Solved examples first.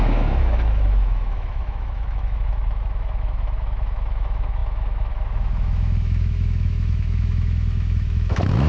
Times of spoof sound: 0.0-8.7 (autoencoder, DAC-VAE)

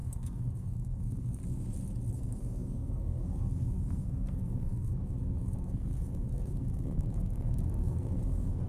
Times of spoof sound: 0.0-1.4 (codec, SNAC); 2.1-8.7

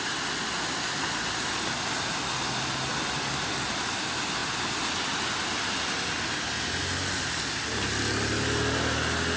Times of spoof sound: none

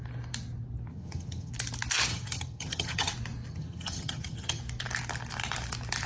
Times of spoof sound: 0.9-1.5 (vocoder, HiFi-GAN); 2.1-3.1; 3.5-4.6

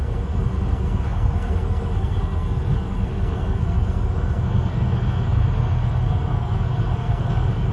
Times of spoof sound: 0.0-7.7 (codec, SNAC)

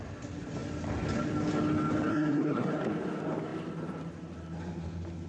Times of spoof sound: 2.1-2.7 (codec, SNAC)

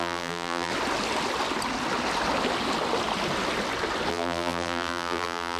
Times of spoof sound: 0.0-0.7 (vocoder, BigVGAN v2); 4.1-5.6